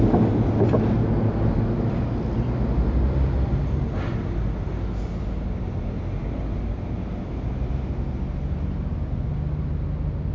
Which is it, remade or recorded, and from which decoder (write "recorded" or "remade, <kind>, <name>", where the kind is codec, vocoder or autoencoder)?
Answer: recorded